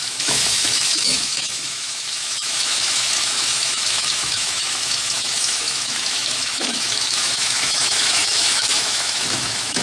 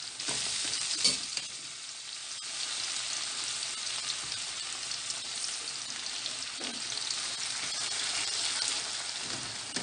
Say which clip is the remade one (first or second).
first